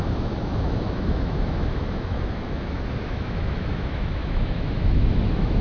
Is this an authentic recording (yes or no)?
no